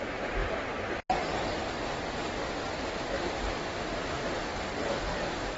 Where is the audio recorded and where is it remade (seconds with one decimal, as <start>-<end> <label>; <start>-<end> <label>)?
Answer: 0.0-5.6 recorded